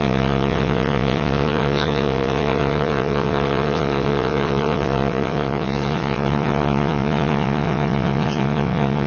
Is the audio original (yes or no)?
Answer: no